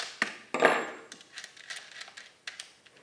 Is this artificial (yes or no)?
no